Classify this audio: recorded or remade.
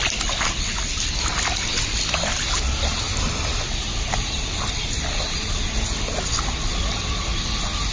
recorded